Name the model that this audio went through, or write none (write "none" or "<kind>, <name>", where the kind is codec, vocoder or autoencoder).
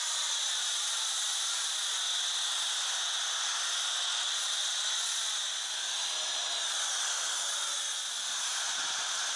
none